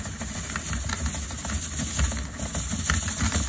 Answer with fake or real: real